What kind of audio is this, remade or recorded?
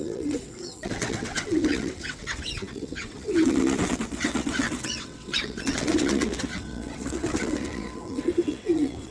remade